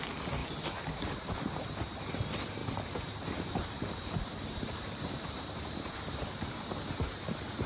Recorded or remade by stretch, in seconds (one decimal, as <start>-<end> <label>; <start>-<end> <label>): 0.0-0.4 recorded; 0.4-1.7 remade; 1.7-2.6 recorded; 2.6-6.2 remade; 6.2-7.7 recorded